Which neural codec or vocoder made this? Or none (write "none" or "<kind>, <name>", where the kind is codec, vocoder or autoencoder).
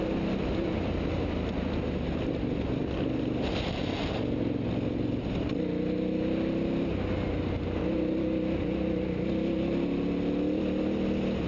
none